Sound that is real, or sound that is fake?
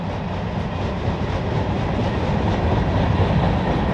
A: real